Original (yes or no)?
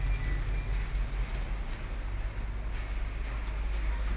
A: yes